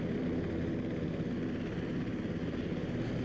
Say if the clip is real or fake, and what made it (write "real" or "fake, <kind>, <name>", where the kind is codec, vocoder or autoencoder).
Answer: real